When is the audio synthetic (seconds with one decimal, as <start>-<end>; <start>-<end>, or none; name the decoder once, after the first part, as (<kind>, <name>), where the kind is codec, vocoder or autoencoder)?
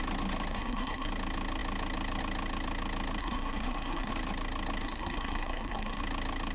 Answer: 0.5-1.1 (codec, SNAC); 3.2-4.1; 4.8-6.0